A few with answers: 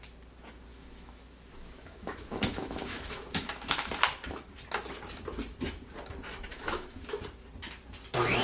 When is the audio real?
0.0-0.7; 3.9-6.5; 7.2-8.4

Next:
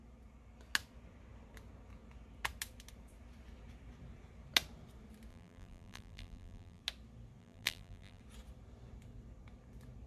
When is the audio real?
0.0-5.3; 6.8-7.4; 8.2-10.1

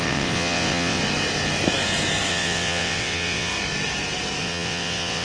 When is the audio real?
1.0-2.3; 3.5-4.4

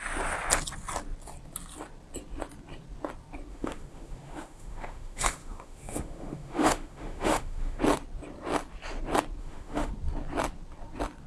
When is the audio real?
0.0-3.5; 7.8-9.4; 9.9-11.3

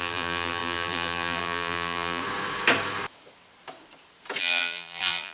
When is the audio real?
2.2-4.4

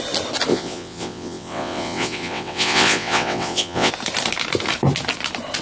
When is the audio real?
0.0-0.5; 3.9-5.6